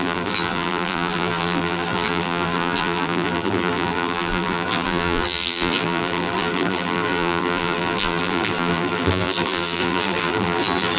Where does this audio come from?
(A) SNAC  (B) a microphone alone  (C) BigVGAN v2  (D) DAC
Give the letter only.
C